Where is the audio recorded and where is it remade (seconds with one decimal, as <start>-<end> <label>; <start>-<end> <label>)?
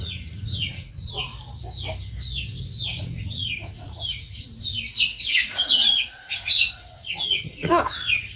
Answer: 0.0-1.3 remade; 1.3-3.0 recorded; 3.0-4.7 remade; 4.7-5.3 recorded; 5.3-8.4 remade